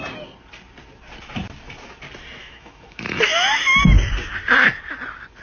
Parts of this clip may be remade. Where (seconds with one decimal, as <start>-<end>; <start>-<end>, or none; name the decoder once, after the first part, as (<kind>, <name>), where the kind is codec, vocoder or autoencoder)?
2.4-3.8 (autoencoder, DAC-VAE)